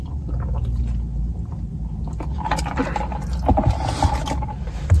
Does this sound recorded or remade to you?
recorded